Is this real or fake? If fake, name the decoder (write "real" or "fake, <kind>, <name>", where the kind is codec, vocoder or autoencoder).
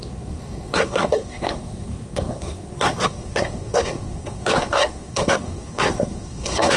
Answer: fake, codec, SNAC